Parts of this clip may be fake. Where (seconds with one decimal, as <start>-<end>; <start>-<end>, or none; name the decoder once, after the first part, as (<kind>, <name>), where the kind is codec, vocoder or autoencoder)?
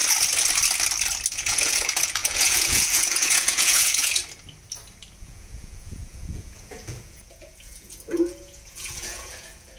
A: 1.3-4.2 (vocoder, Vocos); 5.2-9.8